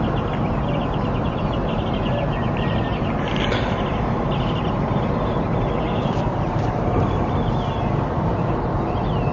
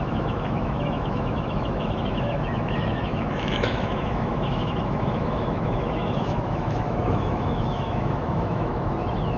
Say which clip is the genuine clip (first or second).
first